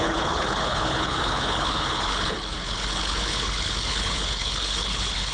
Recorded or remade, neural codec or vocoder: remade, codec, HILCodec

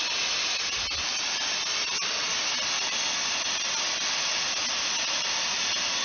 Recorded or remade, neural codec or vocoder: recorded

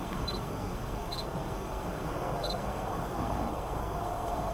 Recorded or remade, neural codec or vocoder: remade, codec, SNAC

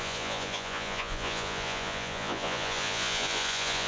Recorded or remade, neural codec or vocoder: remade, vocoder, Vocos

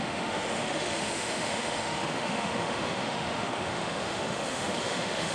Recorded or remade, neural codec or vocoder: remade, autoencoder, DAC-VAE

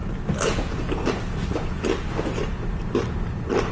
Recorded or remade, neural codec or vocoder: recorded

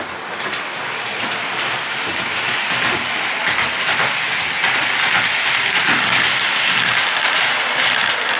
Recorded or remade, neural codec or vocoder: recorded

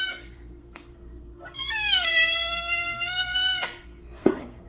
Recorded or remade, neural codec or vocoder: remade, codec, SNAC